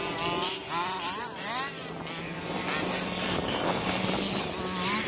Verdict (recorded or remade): recorded